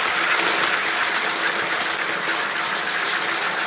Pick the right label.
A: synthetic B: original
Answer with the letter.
B